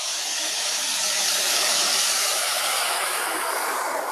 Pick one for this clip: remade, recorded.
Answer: remade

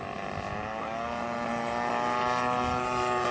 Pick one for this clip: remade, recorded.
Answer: recorded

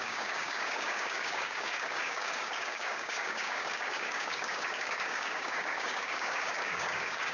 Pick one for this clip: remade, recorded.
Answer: remade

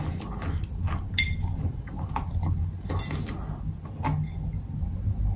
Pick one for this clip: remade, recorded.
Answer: recorded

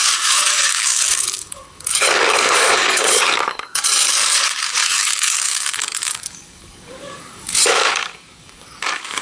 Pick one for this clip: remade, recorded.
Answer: remade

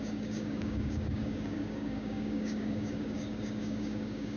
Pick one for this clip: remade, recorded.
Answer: remade